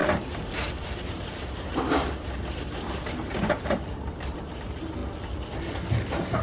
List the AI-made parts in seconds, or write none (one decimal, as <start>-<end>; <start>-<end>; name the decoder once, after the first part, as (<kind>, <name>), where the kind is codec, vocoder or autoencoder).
0.0-5.0 (vocoder, BigVGAN v2); 5.9-6.4